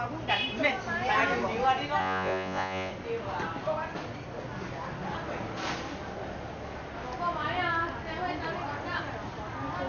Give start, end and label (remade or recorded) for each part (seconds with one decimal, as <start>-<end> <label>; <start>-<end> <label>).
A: 0.0-2.0 recorded; 2.0-2.9 remade; 2.9-9.9 recorded